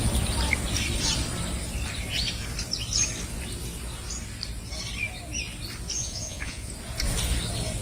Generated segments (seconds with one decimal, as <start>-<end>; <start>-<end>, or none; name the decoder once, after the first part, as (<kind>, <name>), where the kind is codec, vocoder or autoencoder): 6.0-6.7 (vocoder, Vocos)